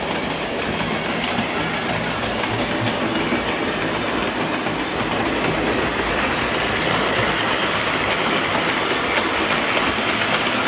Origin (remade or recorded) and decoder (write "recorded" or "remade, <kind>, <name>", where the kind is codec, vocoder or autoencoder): recorded